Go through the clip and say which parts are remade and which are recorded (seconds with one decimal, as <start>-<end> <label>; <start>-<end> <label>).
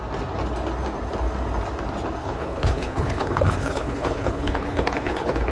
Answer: 0.0-2.2 recorded; 2.2-5.5 remade